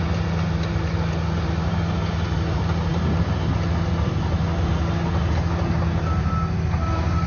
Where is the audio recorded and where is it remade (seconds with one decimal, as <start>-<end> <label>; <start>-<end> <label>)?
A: 0.0-7.3 recorded